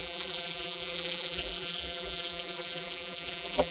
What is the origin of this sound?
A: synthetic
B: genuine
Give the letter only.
A